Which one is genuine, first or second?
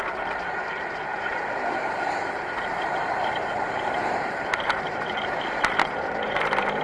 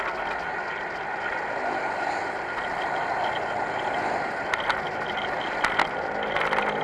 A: second